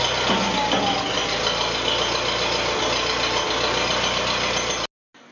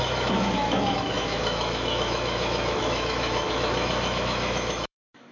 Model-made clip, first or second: second